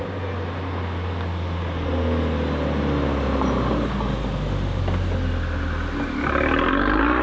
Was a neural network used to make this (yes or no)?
no